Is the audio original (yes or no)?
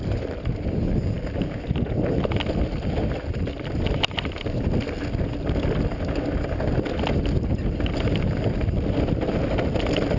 yes